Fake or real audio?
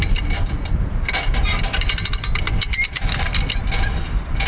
real